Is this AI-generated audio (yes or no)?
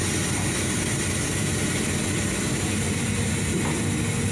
no